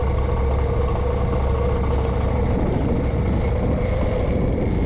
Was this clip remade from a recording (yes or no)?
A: no